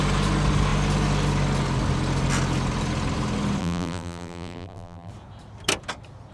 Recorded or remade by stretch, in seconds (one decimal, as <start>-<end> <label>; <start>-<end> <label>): 0.0-3.6 recorded; 3.6-5.1 remade; 5.1-6.3 recorded